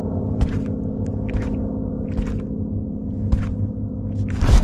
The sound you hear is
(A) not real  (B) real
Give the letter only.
B